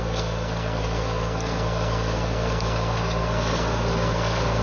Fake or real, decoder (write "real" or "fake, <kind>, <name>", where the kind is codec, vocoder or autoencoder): fake, codec, SNAC